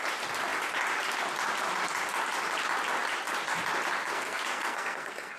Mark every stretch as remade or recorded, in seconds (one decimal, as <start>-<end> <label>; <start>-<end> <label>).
0.0-4.0 recorded; 4.0-5.4 remade